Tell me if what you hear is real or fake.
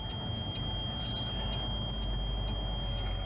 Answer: real